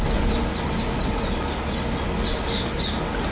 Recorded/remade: recorded